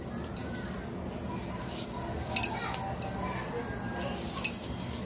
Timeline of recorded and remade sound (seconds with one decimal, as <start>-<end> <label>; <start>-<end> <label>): 0.0-5.1 recorded